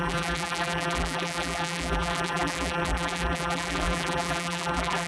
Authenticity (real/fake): fake